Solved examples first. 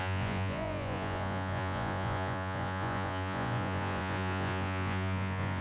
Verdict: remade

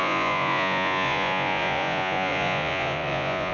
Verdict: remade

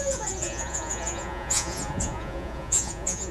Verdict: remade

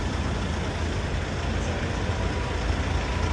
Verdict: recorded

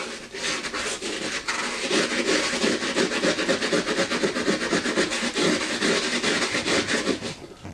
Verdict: recorded